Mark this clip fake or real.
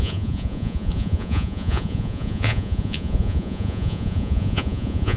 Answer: fake